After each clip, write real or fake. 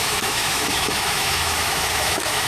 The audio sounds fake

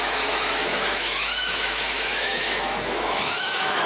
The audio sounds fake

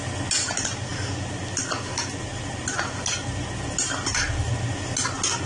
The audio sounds real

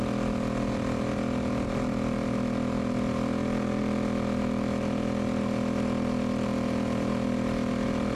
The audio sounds real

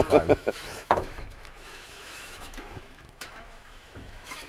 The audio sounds fake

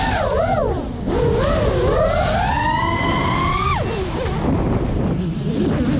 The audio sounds real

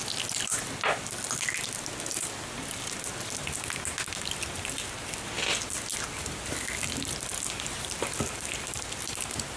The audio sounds real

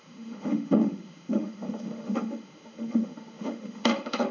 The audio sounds fake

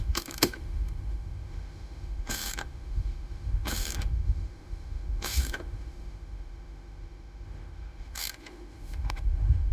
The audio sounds fake